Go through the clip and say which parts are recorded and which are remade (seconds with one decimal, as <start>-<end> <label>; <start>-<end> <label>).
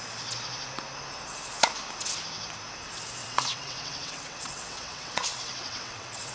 0.0-3.2 recorded; 3.2-6.3 remade